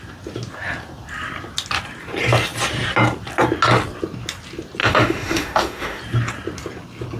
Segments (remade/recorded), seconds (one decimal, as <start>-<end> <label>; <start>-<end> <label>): 0.0-4.8 recorded; 4.8-6.0 remade; 6.0-7.2 recorded